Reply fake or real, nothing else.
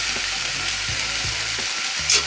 real